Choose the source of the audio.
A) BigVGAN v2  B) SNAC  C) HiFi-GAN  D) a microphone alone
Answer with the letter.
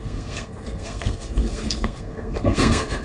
B